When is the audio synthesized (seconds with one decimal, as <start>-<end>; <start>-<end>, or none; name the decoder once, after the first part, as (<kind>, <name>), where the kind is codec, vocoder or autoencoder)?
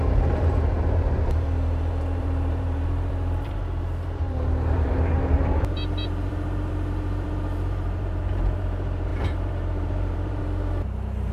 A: 0.0-11.3 (vocoder, BigVGAN v2)